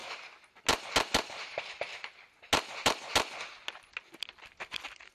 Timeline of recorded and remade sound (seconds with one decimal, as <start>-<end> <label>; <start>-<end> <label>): 0.0-5.1 recorded